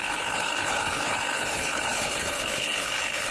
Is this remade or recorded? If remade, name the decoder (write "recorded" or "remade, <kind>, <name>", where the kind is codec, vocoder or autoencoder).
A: remade, codec, HILCodec